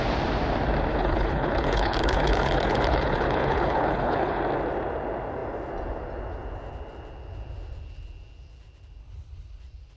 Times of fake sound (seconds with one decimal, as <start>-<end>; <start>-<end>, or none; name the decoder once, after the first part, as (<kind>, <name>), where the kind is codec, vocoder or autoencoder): 0.9-4.4 (codec, HILCodec); 9.0-9.6